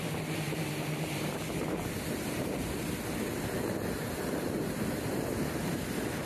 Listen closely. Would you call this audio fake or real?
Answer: fake